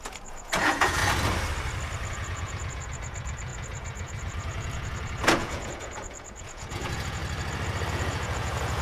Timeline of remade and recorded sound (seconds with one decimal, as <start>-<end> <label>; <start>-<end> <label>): 0.0-1.0 remade; 1.0-2.1 recorded; 2.1-7.2 remade; 7.2-7.9 recorded; 7.9-8.8 remade